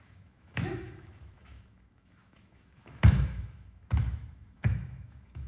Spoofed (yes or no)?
yes